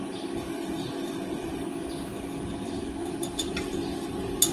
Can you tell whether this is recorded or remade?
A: recorded